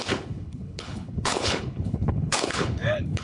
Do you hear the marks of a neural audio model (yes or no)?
yes